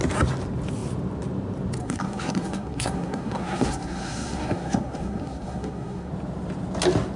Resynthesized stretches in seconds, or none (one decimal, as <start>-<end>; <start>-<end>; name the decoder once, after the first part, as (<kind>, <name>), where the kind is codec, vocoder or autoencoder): 1.8-6.1 (codec, SNAC)